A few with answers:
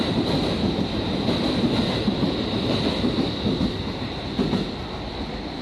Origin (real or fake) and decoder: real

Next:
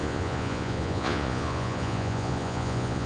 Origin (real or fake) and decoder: fake, vocoder, Vocos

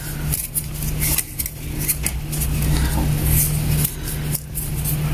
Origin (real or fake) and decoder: real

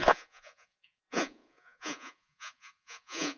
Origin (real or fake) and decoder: fake, vocoder, Vocos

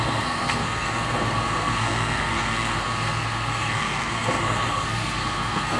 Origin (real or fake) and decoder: fake, codec, SNAC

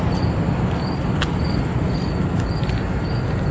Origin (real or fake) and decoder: real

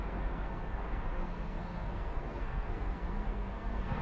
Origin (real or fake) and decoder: fake, codec, SNAC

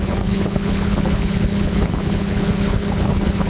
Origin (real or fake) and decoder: fake, codec, HILCodec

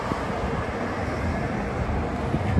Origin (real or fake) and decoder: real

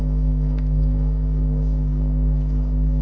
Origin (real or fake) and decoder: fake, codec, DAC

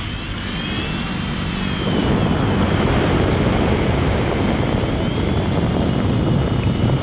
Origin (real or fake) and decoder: real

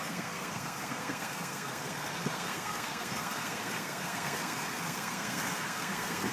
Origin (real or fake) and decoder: fake, codec, SNAC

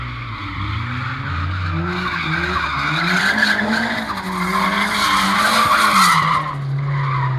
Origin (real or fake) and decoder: real